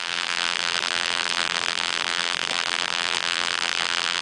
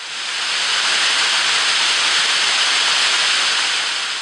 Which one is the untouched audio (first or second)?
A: second